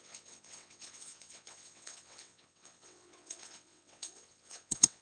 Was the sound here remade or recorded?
remade